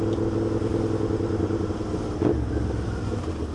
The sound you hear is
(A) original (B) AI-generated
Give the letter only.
A